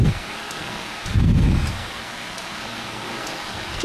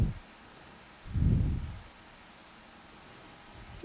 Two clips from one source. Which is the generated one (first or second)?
first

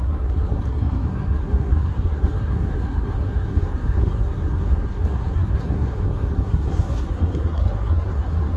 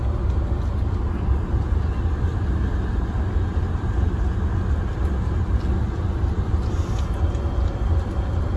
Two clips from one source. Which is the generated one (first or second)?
first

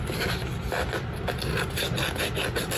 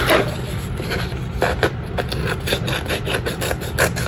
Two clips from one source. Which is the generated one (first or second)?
second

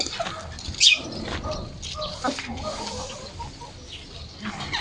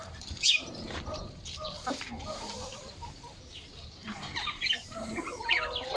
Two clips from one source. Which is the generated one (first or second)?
second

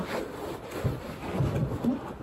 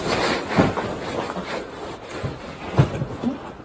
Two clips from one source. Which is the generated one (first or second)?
second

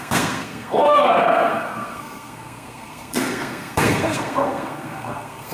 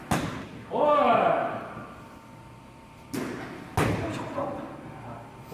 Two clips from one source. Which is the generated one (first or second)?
first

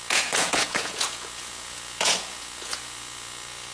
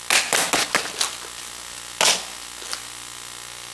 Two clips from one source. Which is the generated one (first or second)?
first